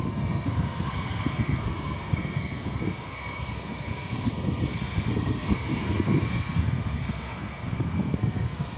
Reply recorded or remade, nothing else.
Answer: remade